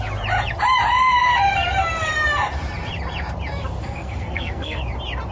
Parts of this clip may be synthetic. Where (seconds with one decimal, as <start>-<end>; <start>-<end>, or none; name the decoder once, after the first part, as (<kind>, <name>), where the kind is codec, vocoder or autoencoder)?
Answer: 3.8-4.8 (codec, SNAC)